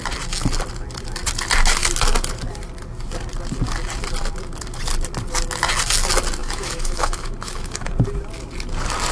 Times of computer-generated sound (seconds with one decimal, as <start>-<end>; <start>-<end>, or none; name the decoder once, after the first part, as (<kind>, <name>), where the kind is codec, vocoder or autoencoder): 6.4-7.9 (autoencoder, DAC-VAE)